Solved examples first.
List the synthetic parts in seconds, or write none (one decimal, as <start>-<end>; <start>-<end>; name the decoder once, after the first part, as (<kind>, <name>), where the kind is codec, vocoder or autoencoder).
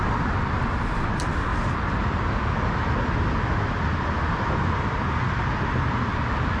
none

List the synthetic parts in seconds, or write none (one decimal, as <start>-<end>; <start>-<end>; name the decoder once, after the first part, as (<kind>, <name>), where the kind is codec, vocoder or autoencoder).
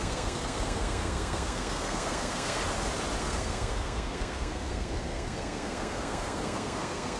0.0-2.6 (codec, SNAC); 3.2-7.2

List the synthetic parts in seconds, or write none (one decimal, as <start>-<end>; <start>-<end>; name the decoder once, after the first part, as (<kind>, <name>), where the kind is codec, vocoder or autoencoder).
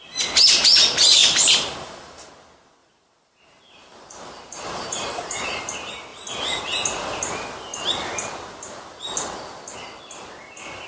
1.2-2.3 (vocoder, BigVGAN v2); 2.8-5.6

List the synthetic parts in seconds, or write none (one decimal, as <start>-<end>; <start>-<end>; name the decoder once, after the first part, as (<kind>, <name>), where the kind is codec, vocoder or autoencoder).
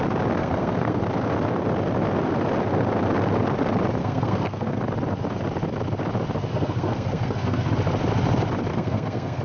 0.4-1.0 (codec, SNAC); 4.0-4.8; 6.5-7.7; 8.7-9.4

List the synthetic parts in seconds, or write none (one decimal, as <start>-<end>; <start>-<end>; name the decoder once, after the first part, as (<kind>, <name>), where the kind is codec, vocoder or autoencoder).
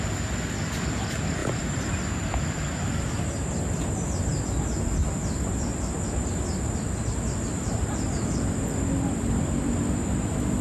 1.4-1.9 (vocoder, BigVGAN v2)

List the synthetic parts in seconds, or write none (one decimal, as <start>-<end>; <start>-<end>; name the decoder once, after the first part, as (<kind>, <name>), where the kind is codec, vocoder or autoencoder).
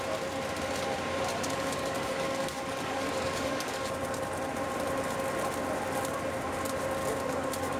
1.3-3.8 (codec, DAC); 7.0-7.8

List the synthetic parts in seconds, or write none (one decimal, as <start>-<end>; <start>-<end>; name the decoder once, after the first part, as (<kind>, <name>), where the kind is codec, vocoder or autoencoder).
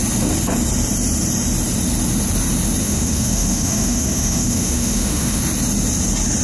2.8-5.4 (autoencoder, DAC-VAE)